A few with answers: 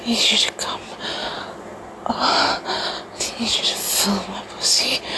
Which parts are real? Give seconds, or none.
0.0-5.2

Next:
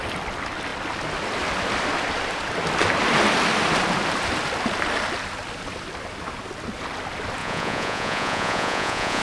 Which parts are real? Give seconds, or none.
0.0-7.4

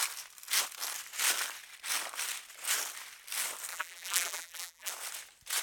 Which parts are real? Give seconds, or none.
0.0-3.7; 4.9-5.6

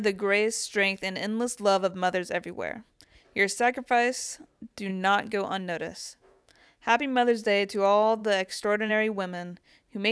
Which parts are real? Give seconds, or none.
0.0-1.9; 2.9-4.9; 7.0-8.2; 8.9-10.1